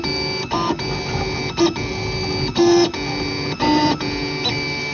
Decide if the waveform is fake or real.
real